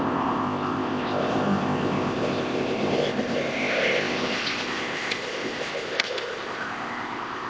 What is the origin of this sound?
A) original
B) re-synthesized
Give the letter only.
B